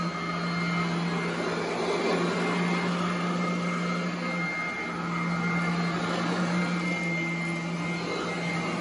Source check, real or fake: real